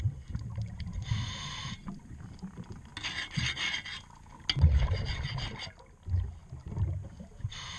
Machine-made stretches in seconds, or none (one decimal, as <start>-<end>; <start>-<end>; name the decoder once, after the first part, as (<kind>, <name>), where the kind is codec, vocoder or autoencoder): none

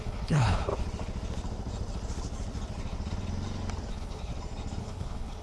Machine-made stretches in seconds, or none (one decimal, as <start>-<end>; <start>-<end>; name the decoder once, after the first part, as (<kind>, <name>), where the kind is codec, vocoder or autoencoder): 0.0-0.7 (codec, HILCodec); 3.9-4.3; 4.8-5.4

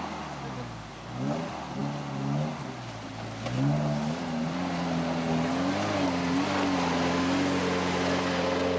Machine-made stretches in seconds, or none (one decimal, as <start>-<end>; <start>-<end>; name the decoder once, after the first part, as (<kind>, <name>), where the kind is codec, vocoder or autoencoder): none

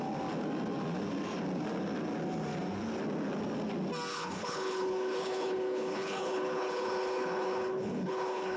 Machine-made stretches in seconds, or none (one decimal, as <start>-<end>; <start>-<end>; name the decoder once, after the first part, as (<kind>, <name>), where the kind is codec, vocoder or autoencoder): 4.1-8.6 (codec, HILCodec)

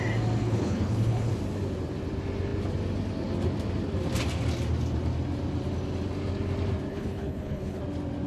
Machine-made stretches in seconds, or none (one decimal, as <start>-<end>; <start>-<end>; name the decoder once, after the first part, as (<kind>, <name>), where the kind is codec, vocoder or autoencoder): 0.4-1.3 (codec, HILCodec); 6.9-7.8

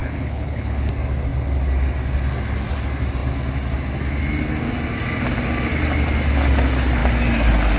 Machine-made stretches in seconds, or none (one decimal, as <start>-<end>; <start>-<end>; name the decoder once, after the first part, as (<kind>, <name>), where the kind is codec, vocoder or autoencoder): 0.0-0.9 (codec, HILCodec)

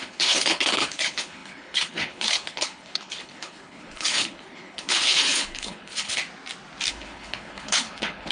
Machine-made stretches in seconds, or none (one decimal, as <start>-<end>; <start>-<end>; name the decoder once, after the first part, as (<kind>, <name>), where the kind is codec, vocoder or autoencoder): 0.0-6.2 (codec, HILCodec); 6.9-8.3